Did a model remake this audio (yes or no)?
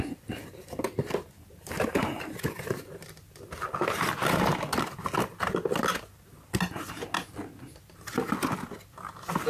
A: no